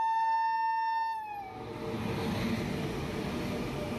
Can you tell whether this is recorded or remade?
recorded